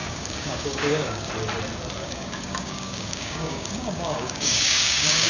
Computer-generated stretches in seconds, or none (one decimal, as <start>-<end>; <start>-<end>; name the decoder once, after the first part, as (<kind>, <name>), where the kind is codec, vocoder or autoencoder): 0.0-1.3 (codec, DAC); 2.0-5.3